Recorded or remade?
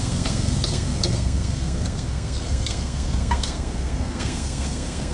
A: remade